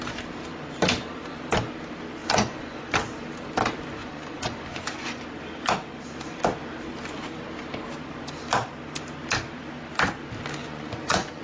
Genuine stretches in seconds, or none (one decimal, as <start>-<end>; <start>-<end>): 0.0-2.2; 2.9-4.0; 5.2-10.6